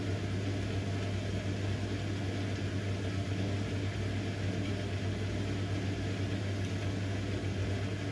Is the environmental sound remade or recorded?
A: recorded